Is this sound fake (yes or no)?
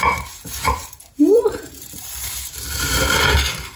yes